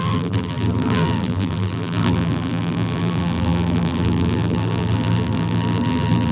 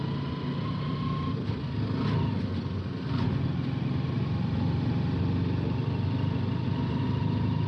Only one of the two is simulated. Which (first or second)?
first